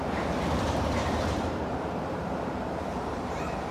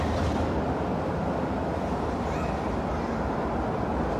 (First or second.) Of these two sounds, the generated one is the first